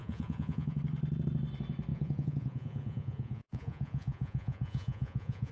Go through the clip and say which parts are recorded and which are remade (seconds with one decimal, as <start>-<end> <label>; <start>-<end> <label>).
0.0-0.8 remade; 0.8-1.9 recorded; 1.9-5.5 remade